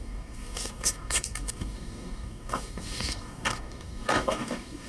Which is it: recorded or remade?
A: remade